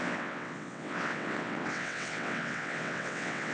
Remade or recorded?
remade